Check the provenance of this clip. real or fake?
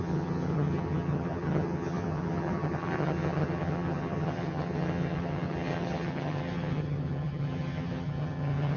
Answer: fake